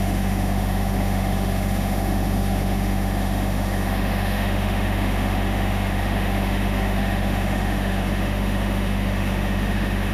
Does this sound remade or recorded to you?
remade